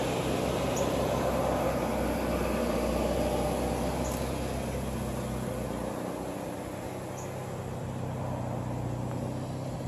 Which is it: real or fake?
real